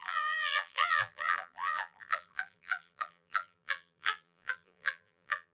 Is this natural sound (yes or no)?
no